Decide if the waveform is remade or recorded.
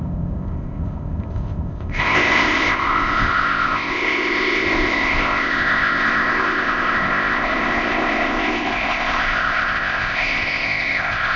remade